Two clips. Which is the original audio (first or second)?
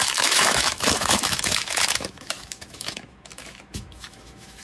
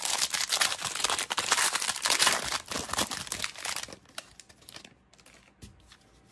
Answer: second